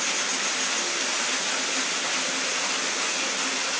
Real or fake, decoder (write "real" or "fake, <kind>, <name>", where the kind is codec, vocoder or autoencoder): real